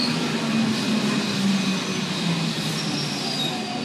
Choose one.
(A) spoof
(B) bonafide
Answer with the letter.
B